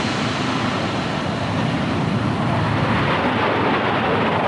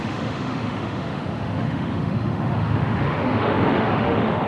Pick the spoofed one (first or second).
second